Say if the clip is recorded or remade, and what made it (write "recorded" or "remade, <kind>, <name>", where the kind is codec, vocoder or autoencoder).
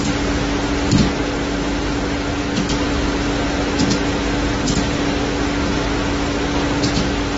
recorded